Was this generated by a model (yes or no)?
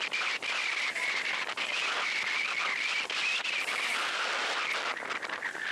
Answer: no